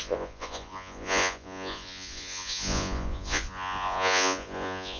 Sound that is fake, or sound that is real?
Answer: fake